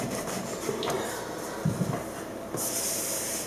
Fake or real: real